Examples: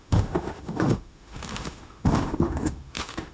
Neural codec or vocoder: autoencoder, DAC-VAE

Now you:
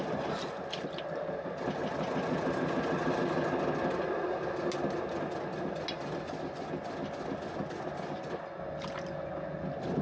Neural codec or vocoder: none